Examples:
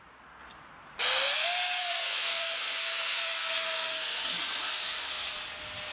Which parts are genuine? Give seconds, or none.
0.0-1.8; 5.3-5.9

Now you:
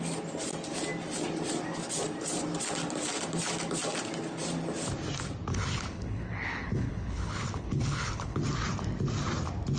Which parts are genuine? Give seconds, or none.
0.0-5.5; 8.4-9.8

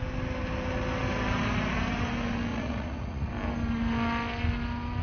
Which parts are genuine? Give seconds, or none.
0.0-2.5; 3.3-5.0

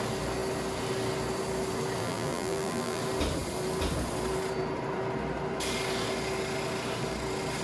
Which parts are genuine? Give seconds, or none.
0.0-2.0; 3.0-7.6

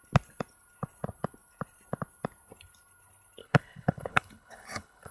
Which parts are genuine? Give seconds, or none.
0.0-3.4

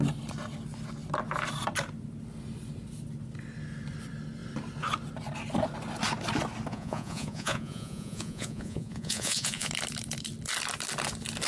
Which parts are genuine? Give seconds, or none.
0.0-6.7; 9.7-11.5